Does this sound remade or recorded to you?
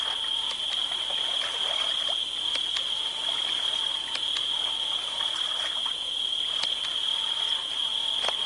recorded